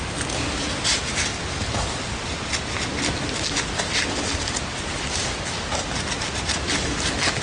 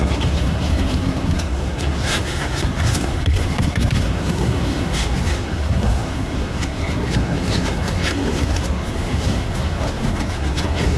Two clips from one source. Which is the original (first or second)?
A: first